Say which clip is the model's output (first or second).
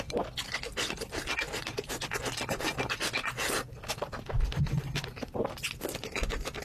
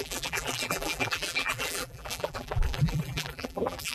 second